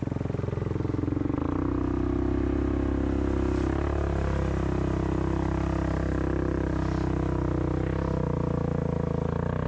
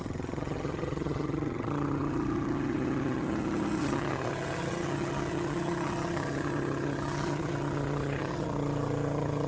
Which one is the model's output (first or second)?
second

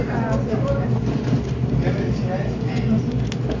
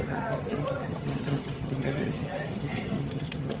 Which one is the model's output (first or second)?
second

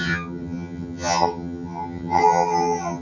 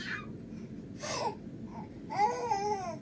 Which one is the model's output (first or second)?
first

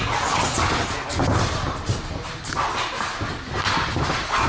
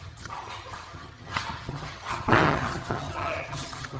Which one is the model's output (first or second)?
second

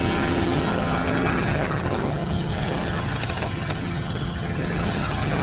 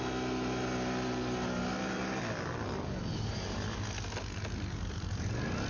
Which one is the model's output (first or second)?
first